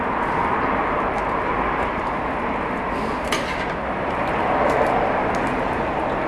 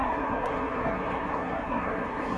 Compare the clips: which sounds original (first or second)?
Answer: first